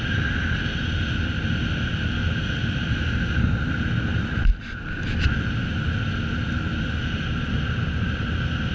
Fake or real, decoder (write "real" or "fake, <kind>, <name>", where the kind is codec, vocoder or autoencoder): real